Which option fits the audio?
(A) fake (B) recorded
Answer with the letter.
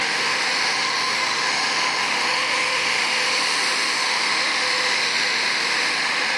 A